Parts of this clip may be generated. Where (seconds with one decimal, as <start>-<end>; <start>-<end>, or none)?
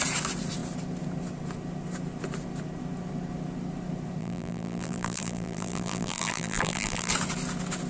4.2-7.1